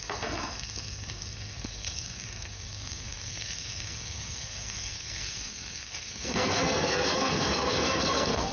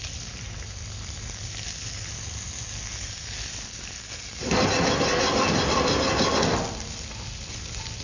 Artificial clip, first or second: first